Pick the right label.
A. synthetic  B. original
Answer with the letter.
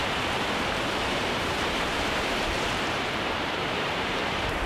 A